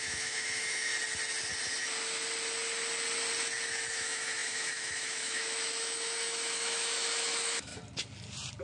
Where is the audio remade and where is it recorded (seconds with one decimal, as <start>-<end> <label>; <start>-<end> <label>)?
0.0-0.9 remade; 0.9-3.9 recorded; 3.9-7.7 remade; 7.7-8.6 recorded